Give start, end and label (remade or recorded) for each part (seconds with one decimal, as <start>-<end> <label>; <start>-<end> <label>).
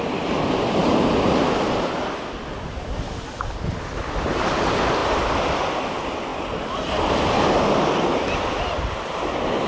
0.0-9.7 recorded